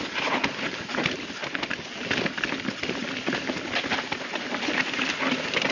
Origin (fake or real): real